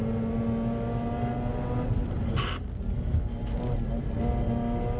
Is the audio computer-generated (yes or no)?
no